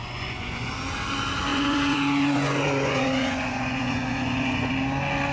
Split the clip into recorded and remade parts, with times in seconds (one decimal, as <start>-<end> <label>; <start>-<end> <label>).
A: 0.0-0.7 remade; 0.7-1.5 recorded; 1.5-4.7 remade; 4.7-5.3 recorded